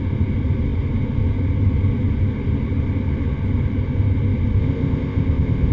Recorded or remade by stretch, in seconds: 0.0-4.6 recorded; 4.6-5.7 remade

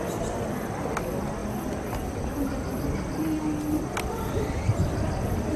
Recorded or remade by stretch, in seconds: 0.0-5.6 recorded

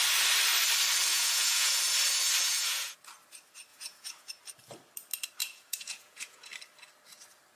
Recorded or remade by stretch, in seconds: 0.0-1.1 recorded; 1.1-1.8 remade; 1.8-2.5 recorded; 2.5-3.0 remade; 3.0-3.7 recorded; 3.7-4.3 remade; 4.3-5.4 recorded; 5.4-6.5 remade; 6.5-7.6 recorded

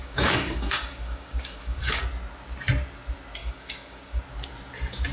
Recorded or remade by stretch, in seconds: 0.0-2.0 remade; 2.0-3.4 recorded; 3.4-4.2 remade; 4.2-5.1 recorded

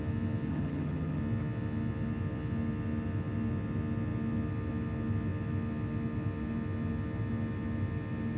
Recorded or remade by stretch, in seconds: 0.0-0.5 recorded; 0.5-1.2 remade; 1.2-8.4 recorded

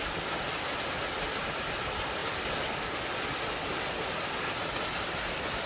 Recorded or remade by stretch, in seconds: 0.0-5.7 recorded